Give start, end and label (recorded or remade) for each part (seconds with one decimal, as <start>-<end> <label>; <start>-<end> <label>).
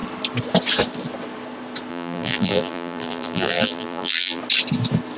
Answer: 0.0-1.9 recorded; 1.9-4.4 remade; 4.4-5.2 recorded